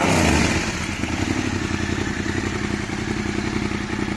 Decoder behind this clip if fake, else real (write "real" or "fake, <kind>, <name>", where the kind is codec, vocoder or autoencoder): real